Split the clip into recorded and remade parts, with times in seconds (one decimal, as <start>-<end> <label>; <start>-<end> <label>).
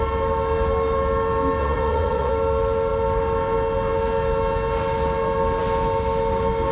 0.0-1.6 recorded; 1.6-2.3 remade; 2.3-6.7 recorded